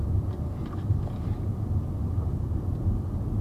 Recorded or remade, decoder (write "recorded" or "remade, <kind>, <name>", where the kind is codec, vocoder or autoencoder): recorded